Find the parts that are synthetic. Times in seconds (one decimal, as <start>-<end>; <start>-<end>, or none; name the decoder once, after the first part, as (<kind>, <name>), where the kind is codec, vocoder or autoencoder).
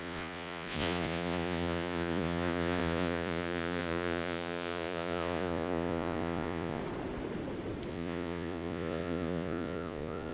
0.0-6.8 (vocoder, Vocos); 7.9-10.3